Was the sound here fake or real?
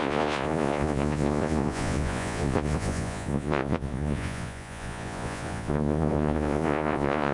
fake